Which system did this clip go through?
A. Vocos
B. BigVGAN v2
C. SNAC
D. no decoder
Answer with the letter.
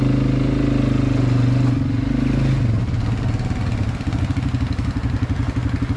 D